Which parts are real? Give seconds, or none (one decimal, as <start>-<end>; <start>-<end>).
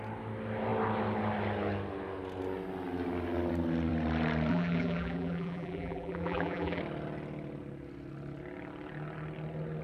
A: 0.0-4.5; 6.8-9.8